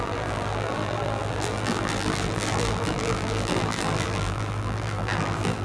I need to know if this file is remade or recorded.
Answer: remade